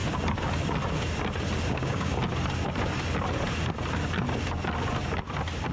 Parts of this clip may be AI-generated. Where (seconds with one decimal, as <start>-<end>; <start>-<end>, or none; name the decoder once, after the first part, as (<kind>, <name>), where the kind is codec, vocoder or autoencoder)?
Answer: 1.7-2.1 (codec, DAC)